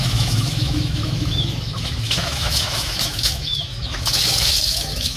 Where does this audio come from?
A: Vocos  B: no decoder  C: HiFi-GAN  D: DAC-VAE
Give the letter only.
D